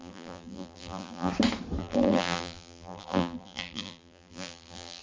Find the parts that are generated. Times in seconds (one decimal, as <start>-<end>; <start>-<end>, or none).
0.0-1.3; 1.8-5.0

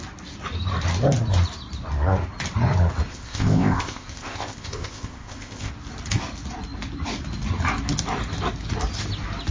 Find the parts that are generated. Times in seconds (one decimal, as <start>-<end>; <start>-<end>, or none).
3.1-5.7

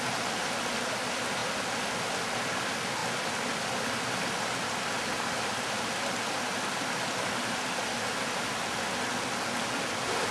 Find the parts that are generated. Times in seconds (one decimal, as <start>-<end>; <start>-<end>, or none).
3.0-3.9

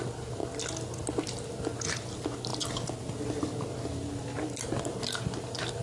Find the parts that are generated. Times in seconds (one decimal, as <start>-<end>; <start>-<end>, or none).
none